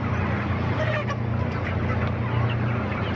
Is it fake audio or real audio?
real